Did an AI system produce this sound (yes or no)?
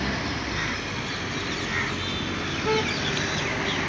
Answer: no